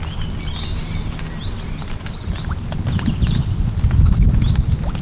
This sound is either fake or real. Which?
fake